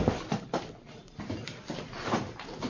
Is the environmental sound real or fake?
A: real